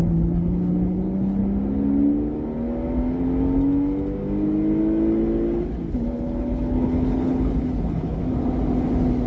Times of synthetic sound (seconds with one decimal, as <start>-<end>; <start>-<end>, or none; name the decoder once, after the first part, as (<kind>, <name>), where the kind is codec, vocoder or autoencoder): 0.0-1.4 (codec, HILCodec); 5.9-8.2